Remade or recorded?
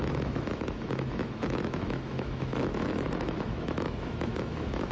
remade